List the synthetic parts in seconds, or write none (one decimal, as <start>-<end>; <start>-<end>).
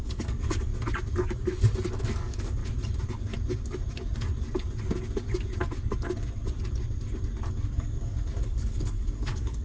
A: 0.0-0.7; 2.0-2.6; 7.5-9.6